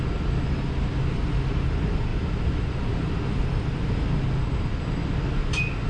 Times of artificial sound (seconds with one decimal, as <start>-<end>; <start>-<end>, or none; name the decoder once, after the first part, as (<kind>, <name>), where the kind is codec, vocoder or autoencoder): none